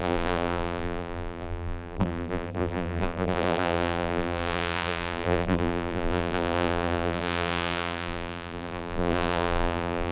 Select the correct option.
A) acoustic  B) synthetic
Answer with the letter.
B